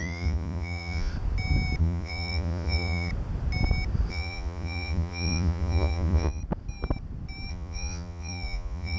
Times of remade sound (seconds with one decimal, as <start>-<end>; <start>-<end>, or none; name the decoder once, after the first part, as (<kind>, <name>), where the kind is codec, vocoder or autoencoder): 0.0-1.1 (vocoder, Vocos); 1.8-3.1; 4.1-6.4; 7.5-9.0